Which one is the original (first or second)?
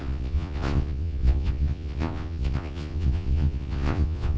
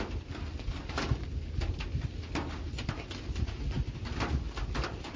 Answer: second